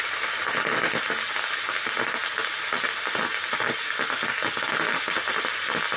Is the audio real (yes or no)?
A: yes